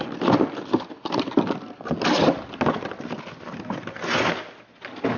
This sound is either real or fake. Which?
real